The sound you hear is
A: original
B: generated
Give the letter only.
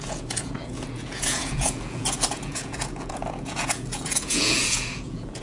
B